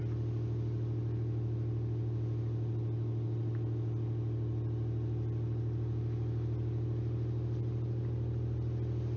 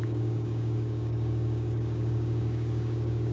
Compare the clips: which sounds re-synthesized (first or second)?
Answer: second